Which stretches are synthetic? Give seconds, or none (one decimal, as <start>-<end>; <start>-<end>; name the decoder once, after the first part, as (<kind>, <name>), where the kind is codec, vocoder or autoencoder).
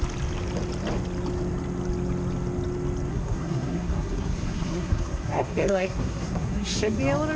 3.1-7.0 (codec, SNAC)